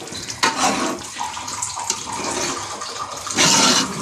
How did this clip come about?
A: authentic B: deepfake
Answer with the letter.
A